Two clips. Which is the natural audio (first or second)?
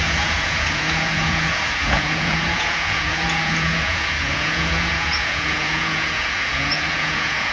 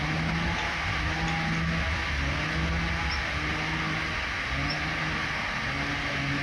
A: second